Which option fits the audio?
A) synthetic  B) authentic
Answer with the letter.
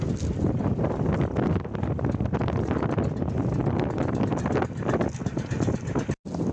B